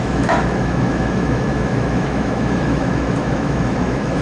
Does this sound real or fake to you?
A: fake